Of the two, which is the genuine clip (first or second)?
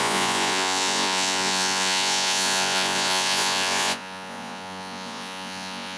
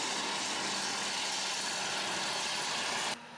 second